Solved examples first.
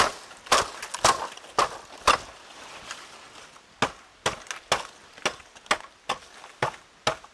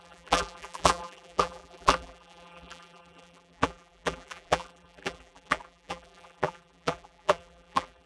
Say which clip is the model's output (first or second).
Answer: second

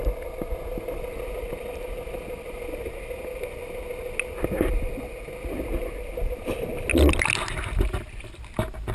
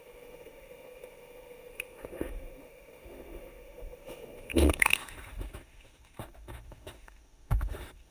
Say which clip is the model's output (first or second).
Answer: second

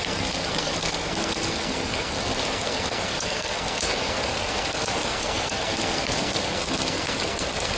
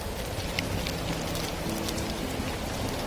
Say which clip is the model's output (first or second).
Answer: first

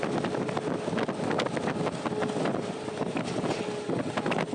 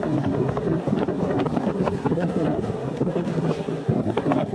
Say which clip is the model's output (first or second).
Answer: second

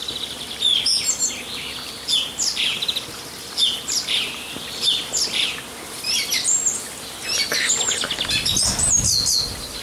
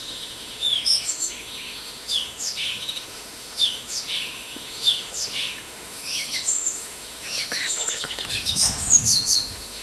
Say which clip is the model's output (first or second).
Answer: second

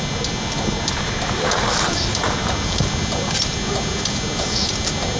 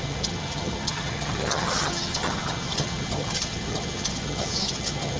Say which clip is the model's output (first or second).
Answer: second